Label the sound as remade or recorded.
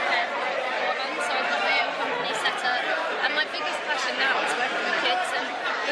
recorded